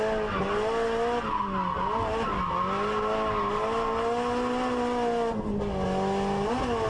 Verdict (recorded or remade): recorded